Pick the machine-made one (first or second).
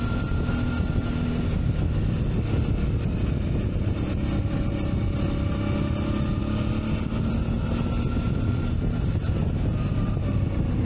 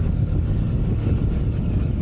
second